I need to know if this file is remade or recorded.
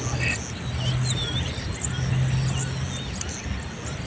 recorded